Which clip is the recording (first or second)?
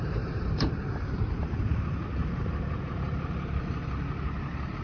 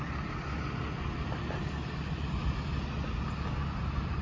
second